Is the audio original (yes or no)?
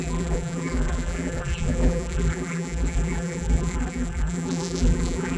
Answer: no